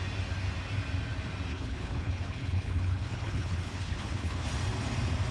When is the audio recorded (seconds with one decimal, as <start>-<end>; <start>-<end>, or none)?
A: 0.0-1.5; 4.5-5.3